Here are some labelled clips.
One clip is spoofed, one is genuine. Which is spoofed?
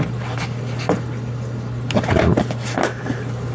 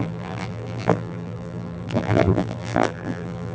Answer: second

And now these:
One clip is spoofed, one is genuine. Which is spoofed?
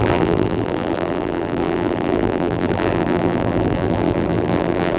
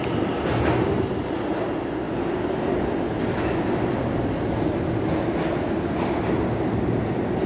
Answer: first